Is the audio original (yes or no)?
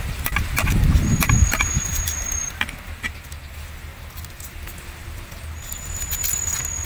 yes